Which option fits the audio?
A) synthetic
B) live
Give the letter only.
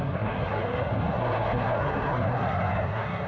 A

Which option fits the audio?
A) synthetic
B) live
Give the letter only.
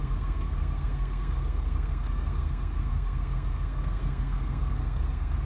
A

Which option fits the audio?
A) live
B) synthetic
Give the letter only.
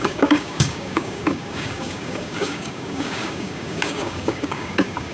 B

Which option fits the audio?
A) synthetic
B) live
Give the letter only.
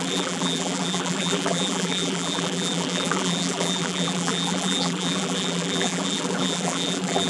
A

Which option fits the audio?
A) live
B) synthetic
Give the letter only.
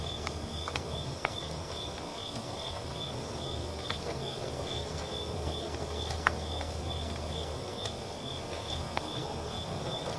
B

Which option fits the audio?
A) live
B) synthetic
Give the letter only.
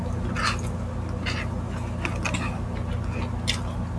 A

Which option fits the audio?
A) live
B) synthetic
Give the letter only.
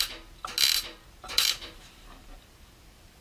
A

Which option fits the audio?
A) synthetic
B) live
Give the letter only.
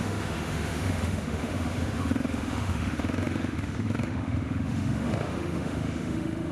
A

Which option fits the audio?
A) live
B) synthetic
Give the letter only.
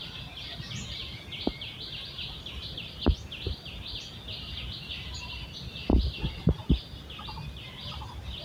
A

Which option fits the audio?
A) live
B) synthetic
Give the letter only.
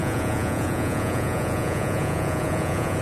B